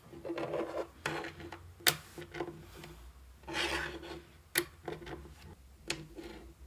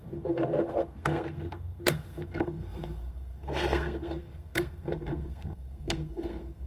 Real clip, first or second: first